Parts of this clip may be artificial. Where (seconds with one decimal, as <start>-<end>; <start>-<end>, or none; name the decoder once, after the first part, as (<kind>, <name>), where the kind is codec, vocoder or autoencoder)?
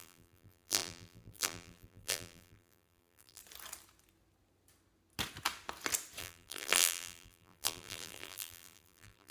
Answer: 0.0-3.4 (vocoder, BigVGAN v2); 6.2-9.3